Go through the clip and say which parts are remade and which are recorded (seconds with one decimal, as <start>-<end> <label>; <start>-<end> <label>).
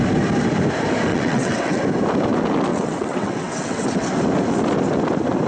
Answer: 0.0-1.1 recorded; 1.1-1.8 remade; 1.8-2.7 recorded; 2.7-4.1 remade; 4.1-5.5 recorded